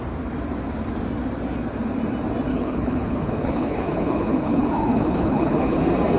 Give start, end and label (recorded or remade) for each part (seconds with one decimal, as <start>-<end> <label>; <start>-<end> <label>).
0.0-2.5 recorded; 2.5-5.8 remade; 5.8-6.2 recorded